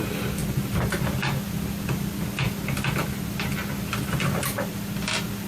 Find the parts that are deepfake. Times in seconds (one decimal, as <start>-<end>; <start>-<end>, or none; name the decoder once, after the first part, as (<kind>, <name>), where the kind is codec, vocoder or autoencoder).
none